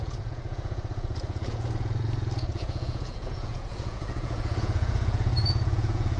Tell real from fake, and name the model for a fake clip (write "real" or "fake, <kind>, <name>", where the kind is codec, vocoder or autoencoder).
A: fake, vocoder, Vocos